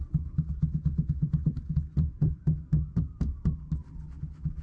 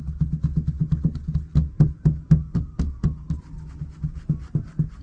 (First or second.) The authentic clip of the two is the second